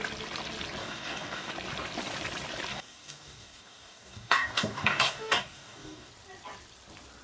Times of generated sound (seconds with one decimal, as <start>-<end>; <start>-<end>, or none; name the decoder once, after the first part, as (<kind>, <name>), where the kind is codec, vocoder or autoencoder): 0.8-1.5 (codec, DAC); 2.7-6.1